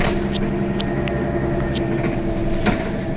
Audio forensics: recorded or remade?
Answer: recorded